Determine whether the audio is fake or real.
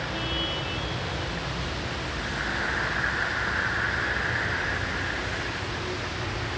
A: real